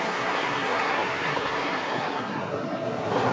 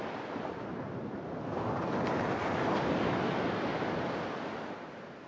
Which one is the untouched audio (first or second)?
second